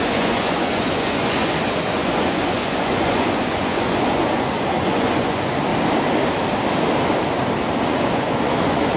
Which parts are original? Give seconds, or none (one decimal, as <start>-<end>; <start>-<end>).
5.7-7.8